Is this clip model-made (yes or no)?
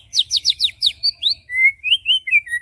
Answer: yes